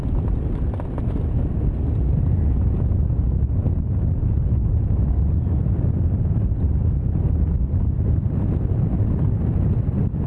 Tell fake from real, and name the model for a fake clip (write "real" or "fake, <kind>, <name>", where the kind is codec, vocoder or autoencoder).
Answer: real